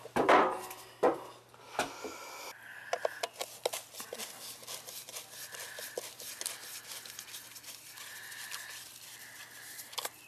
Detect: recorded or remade recorded